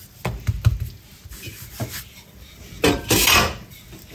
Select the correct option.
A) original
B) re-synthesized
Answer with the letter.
A